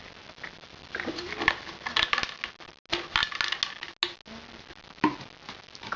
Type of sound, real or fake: real